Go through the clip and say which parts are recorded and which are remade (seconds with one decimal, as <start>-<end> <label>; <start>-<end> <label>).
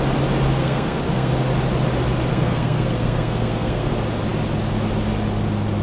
0.0-0.6 recorded; 0.6-1.3 remade; 1.3-2.3 recorded; 2.3-3.9 remade; 3.9-5.8 recorded